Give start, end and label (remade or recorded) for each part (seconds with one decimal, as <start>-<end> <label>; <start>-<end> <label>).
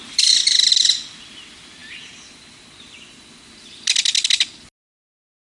0.0-5.6 recorded